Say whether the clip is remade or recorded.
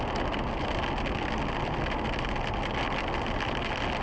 recorded